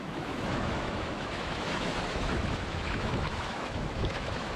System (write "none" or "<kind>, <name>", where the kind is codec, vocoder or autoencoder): autoencoder, DAC-VAE